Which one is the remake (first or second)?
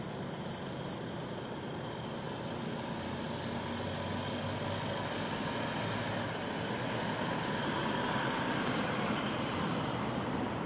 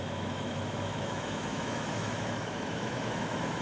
second